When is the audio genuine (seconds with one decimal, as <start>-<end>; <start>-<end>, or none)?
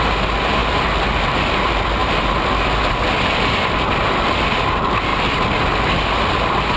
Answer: 0.0-6.8